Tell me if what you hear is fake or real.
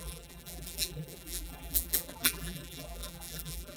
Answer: fake